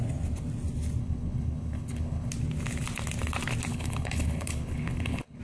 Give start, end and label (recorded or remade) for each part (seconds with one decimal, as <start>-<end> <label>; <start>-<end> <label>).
0.0-1.0 recorded; 1.0-2.3 remade; 2.3-3.7 recorded; 3.7-5.4 remade